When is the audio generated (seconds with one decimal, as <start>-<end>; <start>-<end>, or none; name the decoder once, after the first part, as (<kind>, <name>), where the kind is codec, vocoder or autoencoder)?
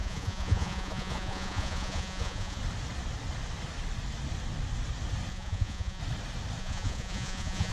0.0-2.6 (vocoder, Vocos); 5.3-6.0; 6.6-7.7